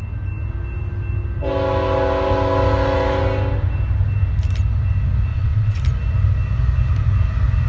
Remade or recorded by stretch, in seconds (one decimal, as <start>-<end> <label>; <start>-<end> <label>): 0.0-5.3 recorded; 5.3-5.8 remade; 5.8-7.7 recorded